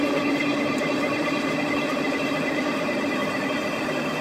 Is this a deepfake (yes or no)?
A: yes